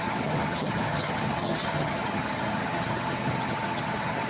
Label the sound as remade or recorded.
remade